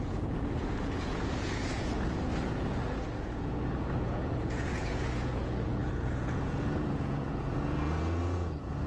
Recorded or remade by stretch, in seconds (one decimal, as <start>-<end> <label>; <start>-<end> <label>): 0.0-8.9 remade